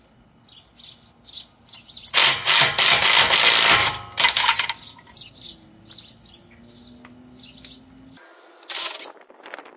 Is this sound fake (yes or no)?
no